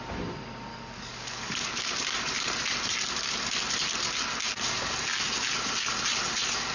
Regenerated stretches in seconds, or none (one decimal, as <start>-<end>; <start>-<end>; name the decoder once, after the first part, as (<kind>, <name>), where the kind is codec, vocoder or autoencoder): 0.7-1.9 (codec, DAC)